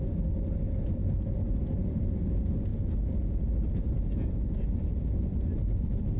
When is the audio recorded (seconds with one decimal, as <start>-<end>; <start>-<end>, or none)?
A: 0.0-6.2